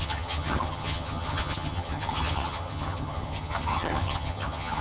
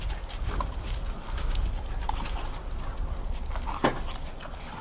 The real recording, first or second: second